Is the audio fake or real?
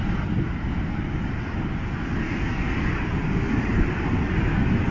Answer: real